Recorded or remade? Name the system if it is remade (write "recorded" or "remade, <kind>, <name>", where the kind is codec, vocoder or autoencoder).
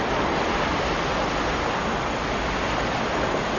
recorded